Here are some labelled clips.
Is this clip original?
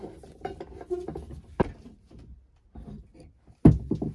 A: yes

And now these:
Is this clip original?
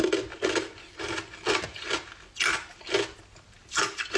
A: yes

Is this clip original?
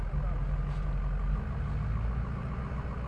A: yes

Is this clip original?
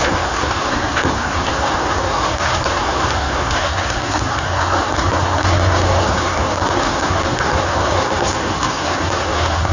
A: no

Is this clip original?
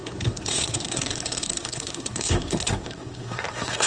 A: no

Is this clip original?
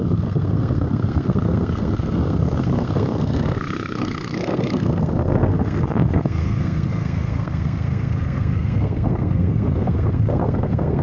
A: no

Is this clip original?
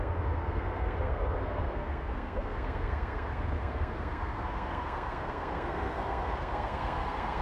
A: no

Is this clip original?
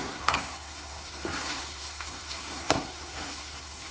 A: no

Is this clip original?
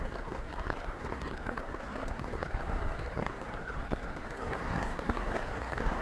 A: no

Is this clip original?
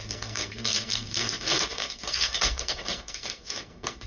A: no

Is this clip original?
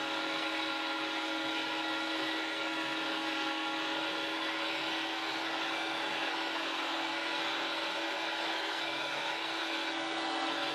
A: no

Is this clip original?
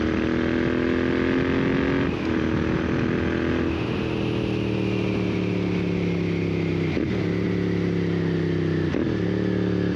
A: yes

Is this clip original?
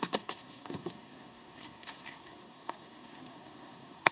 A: no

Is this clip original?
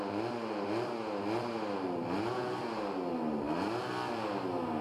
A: yes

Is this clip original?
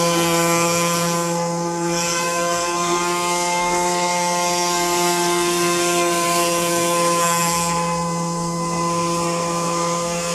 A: no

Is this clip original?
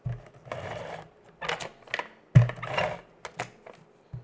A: yes